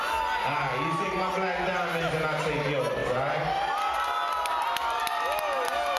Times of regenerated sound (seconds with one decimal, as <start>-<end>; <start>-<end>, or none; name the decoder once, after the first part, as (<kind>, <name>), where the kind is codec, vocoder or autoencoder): none